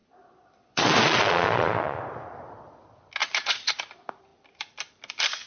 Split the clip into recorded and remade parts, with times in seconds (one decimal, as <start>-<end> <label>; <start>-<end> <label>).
0.0-2.0 remade; 2.0-3.2 recorded; 3.2-3.8 remade; 3.8-5.5 recorded